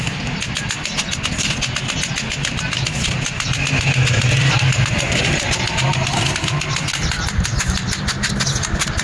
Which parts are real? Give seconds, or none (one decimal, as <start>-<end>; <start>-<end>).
0.0-9.0